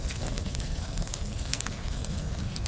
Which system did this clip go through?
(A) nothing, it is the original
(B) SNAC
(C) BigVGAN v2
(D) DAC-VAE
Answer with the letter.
B